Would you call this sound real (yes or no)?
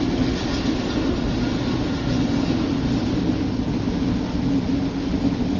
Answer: yes